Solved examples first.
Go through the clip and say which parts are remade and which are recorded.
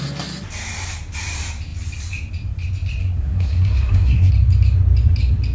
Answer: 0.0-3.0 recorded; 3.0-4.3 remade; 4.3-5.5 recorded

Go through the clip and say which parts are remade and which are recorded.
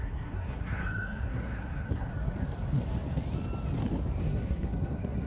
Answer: 0.0-2.1 remade; 2.1-4.2 recorded; 4.2-5.3 remade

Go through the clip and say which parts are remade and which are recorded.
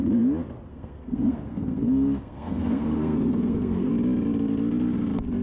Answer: 0.0-0.7 recorded; 0.7-3.9 remade; 3.9-5.4 recorded